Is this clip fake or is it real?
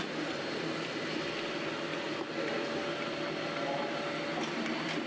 real